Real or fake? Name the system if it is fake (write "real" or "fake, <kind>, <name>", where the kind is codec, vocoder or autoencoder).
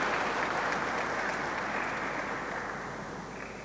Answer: real